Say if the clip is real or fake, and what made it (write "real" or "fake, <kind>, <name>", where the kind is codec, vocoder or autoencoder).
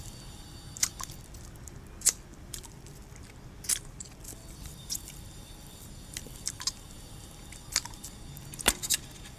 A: fake, vocoder, BigVGAN v2